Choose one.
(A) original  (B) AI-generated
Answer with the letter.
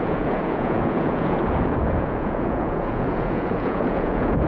B